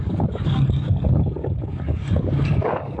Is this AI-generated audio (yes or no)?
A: yes